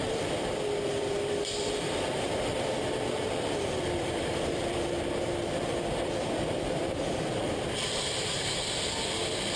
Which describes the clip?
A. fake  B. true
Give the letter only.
A